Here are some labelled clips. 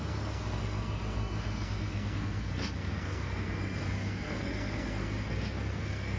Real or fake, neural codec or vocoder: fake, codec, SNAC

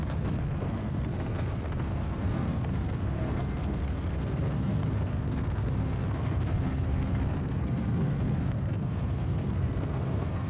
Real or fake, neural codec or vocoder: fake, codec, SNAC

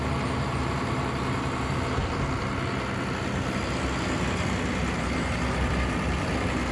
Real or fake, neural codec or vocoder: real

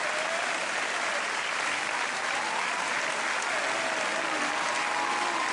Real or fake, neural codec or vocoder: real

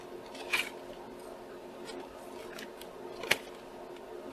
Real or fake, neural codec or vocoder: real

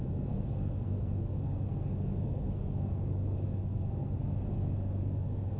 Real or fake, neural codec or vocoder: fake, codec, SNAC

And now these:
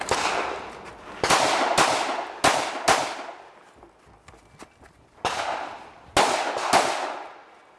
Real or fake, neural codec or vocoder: real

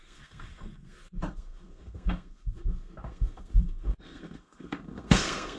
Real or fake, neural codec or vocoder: fake, codec, SNAC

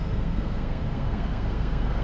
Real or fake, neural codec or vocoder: fake, codec, SNAC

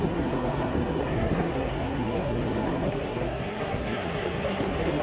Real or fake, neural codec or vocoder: fake, codec, SNAC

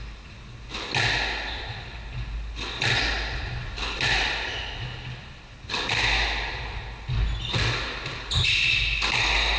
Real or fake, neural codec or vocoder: real